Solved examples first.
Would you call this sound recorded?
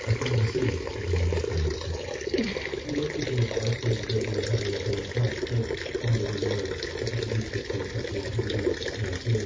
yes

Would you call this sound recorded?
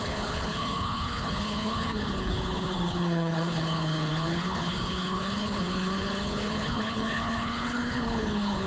no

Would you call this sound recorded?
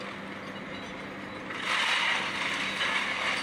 yes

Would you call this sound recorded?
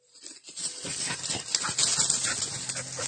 yes